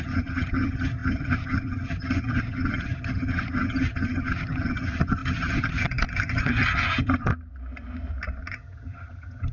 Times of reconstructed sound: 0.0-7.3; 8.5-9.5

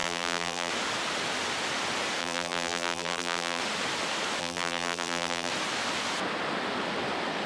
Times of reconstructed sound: 0.0-0.7; 2.2-3.6; 4.4-5.5

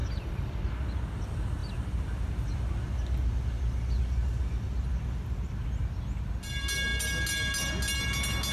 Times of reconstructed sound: 0.0-0.6

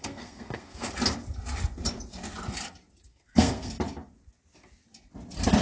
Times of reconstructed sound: 0.0-0.9; 3.1-3.7